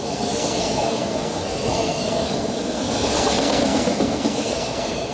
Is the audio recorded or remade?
remade